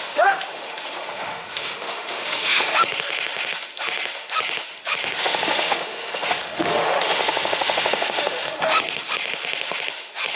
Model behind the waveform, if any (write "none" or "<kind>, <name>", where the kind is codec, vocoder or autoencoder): autoencoder, DAC-VAE